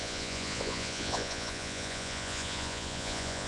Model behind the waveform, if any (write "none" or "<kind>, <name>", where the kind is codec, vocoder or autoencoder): vocoder, Vocos